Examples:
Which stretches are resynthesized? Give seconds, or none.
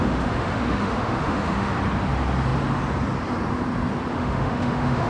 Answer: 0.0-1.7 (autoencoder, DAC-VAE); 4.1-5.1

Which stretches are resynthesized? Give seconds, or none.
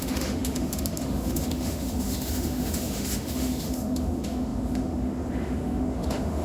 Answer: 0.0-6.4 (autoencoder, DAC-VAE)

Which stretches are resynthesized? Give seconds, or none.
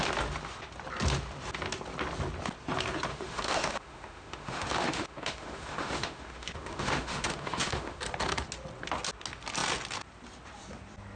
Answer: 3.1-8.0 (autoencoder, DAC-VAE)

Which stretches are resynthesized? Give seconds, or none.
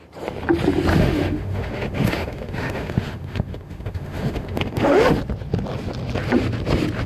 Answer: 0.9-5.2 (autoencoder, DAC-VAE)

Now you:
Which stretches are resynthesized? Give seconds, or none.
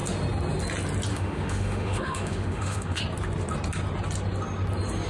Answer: 1.1-3.0 (autoencoder, DAC-VAE)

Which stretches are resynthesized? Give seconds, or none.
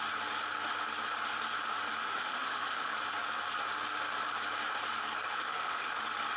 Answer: 2.0-2.9 (autoencoder, DAC-VAE); 5.3-5.9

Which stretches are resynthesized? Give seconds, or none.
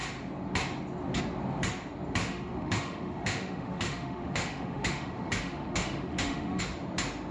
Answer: 2.2-6.6 (autoencoder, DAC-VAE)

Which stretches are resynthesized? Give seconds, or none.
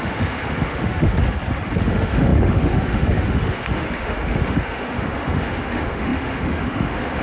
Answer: 0.0-1.2 (autoencoder, DAC-VAE); 1.8-7.2